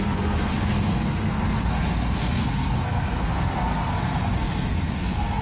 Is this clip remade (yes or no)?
yes